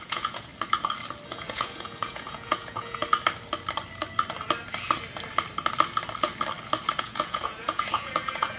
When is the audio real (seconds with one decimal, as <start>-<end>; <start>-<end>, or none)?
0.5-1.3; 3.0-7.0